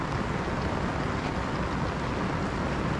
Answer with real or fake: real